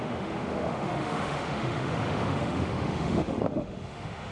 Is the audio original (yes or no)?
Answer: no